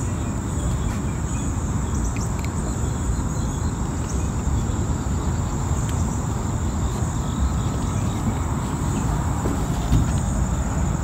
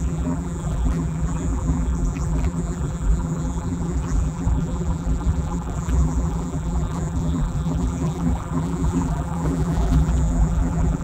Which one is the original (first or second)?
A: first